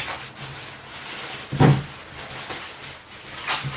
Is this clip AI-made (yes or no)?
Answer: no